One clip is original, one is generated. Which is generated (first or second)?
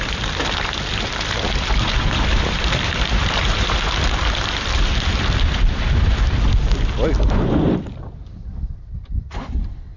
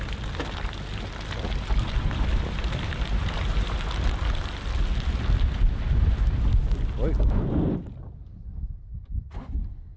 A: first